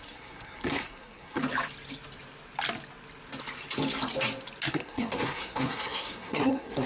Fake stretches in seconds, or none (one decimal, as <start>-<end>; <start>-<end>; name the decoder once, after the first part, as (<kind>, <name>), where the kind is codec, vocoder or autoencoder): 0.0-1.4 (codec, SNAC); 4.7-6.9